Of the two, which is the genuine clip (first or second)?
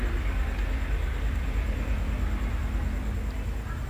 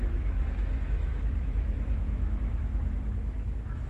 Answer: first